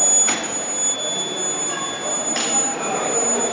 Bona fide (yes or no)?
yes